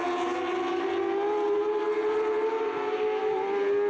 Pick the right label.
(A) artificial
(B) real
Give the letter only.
B